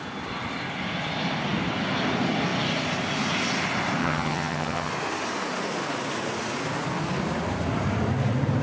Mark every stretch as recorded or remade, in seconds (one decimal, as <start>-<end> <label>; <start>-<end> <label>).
0.0-4.0 recorded; 4.0-4.9 remade; 4.9-8.6 recorded